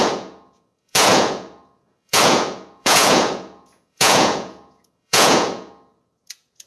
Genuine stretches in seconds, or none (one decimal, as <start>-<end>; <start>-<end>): none